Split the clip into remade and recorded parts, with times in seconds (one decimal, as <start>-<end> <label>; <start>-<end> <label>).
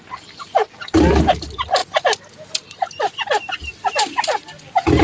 0.0-5.0 recorded